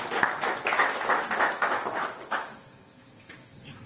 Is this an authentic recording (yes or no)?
no